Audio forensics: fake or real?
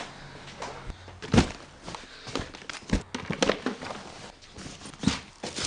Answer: real